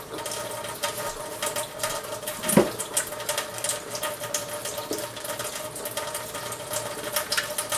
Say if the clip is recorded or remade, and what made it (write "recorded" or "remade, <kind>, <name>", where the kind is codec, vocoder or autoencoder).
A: recorded